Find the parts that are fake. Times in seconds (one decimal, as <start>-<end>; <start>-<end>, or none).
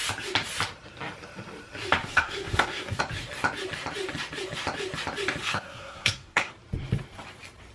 2.0-3.0; 5.4-6.5